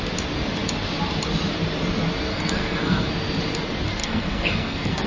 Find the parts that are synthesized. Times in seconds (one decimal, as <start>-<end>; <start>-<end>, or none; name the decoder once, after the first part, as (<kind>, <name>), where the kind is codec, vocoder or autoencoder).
2.3-3.1 (codec, SNAC); 4.0-5.1